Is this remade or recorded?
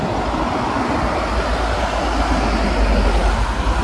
recorded